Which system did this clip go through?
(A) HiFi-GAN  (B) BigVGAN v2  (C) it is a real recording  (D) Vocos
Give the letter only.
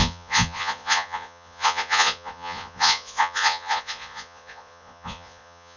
D